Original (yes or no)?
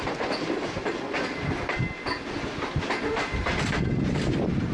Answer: yes